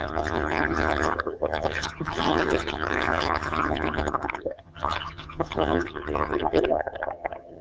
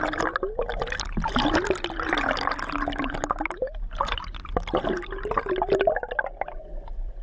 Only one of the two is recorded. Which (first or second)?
second